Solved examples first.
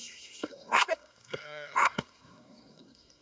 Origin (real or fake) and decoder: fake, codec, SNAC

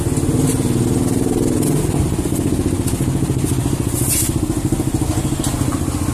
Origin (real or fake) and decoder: real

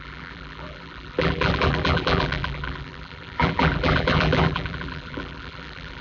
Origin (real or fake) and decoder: fake, vocoder, BigVGAN v2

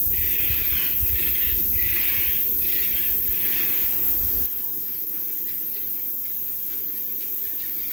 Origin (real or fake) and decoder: fake, vocoder, BigVGAN v2